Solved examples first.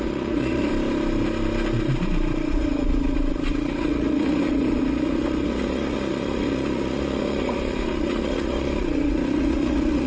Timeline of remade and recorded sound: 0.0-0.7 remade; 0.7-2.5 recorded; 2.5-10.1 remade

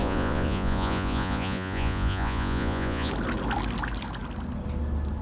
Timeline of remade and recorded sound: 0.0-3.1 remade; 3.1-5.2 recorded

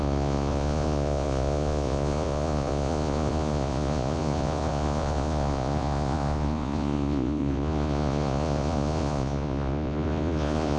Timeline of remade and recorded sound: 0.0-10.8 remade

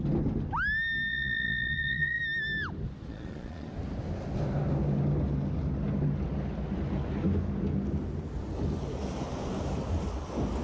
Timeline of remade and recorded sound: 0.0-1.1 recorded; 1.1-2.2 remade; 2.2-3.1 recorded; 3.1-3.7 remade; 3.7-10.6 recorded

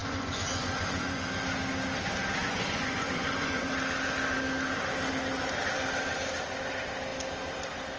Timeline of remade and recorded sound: 0.0-1.2 remade; 1.2-2.4 recorded; 2.4-3.7 remade; 3.7-8.0 recorded

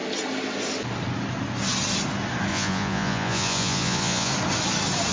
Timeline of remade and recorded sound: 0.0-2.5 recorded; 2.5-4.3 remade; 4.3-5.1 recorded

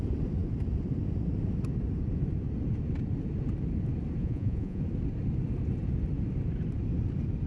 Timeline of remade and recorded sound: 0.0-4.2 recorded; 4.2-4.8 remade; 4.8-7.5 recorded

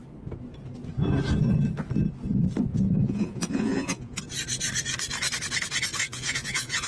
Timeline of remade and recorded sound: 0.0-2.7 recorded; 2.7-4.2 remade; 4.2-6.0 recorded; 6.0-6.9 remade